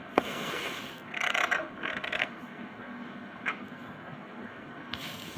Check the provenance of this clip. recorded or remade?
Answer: remade